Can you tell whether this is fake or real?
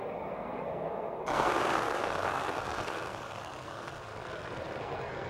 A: fake